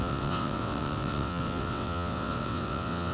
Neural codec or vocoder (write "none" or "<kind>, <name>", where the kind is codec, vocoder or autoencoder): vocoder, WaveNeXt